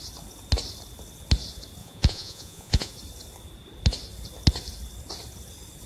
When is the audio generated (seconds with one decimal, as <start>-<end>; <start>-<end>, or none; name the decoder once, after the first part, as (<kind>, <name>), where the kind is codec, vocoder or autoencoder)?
1.8-2.9 (vocoder, Vocos)